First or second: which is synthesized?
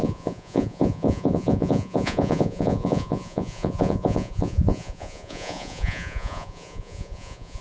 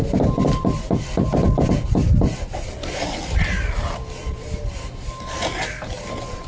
first